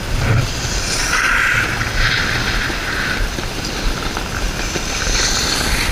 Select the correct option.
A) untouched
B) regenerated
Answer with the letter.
A